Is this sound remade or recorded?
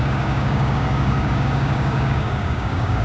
remade